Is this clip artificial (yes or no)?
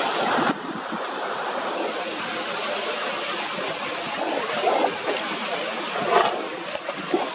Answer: no